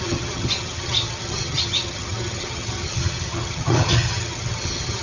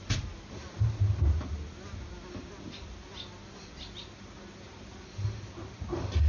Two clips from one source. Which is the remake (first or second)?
first